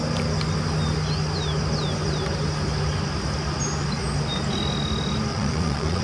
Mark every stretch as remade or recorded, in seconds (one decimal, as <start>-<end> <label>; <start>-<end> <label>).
0.0-5.3 recorded; 5.3-6.0 remade